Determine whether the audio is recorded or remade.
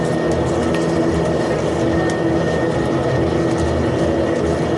recorded